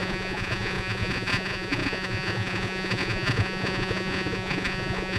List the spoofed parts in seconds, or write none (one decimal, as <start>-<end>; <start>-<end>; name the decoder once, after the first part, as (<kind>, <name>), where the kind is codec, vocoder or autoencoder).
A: 0.0-5.2 (vocoder, Vocos)